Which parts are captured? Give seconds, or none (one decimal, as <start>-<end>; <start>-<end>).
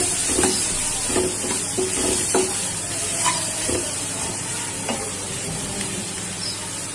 0.0-2.6; 6.3-6.9